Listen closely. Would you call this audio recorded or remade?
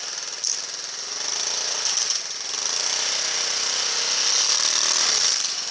recorded